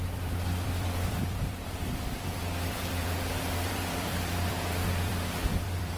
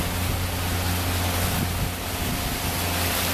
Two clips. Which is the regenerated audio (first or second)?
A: first